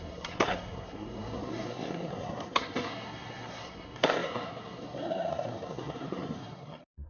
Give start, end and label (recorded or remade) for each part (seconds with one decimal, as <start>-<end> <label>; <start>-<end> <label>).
0.0-7.1 remade